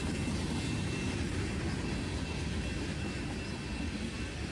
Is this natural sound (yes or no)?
yes